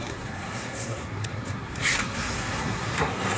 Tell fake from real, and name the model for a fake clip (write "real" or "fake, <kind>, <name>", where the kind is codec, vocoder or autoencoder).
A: fake, codec, SNAC